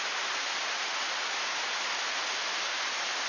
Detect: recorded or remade recorded